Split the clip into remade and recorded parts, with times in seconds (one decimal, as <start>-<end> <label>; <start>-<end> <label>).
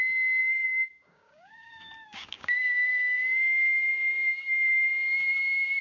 0.0-0.4 recorded; 0.4-3.9 remade; 3.9-5.8 recorded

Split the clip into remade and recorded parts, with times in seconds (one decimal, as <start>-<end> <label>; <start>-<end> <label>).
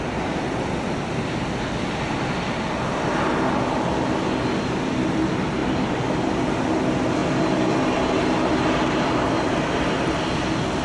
0.0-10.8 recorded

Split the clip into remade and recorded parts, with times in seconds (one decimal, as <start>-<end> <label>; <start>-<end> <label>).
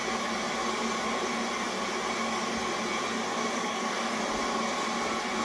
0.0-3.3 recorded; 3.3-4.2 remade; 4.2-5.4 recorded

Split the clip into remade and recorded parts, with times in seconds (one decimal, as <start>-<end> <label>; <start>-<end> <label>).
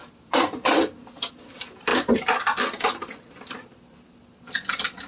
0.0-5.1 recorded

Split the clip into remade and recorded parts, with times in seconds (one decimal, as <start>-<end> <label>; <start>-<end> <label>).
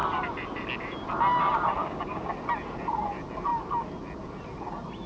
0.0-1.8 recorded; 1.8-2.3 remade; 2.3-5.1 recorded